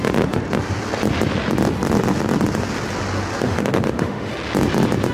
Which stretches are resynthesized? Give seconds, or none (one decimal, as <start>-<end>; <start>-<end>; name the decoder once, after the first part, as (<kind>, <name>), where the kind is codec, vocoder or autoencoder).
3.4-4.3 (autoencoder, DAC-VAE)